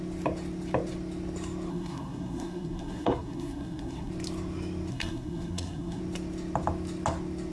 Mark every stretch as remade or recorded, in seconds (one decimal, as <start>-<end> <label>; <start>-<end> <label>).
0.0-1.7 recorded; 1.7-4.1 remade; 4.1-4.9 recorded; 4.9-6.0 remade; 6.0-7.5 recorded